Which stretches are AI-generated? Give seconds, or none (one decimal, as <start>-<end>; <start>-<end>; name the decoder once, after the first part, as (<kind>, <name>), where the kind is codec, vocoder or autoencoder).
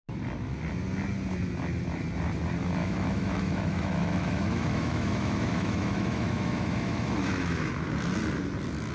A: 2.8-7.7 (autoencoder, DAC-VAE)